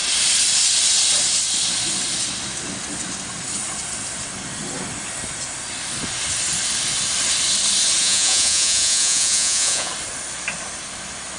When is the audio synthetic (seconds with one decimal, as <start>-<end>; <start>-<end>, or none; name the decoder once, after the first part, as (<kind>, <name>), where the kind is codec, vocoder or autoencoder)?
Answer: 8.0-9.9 (vocoder, Vocos)